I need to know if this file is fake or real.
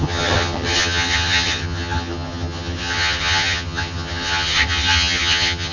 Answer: fake